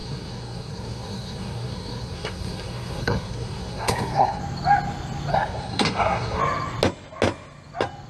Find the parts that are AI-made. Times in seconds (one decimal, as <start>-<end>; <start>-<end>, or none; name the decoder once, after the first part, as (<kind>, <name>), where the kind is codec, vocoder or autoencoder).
0.0-4.4 (codec, SNAC); 5.3-6.4